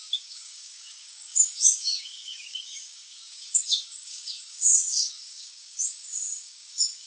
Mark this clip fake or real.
fake